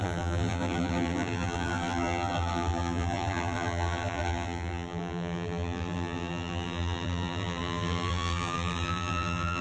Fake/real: fake